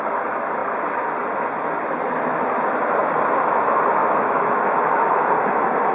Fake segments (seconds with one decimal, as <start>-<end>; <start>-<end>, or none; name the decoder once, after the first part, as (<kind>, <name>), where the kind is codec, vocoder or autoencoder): 4.0-5.3 (autoencoder, DAC-VAE)